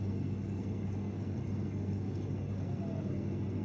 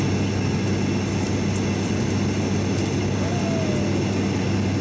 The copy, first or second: first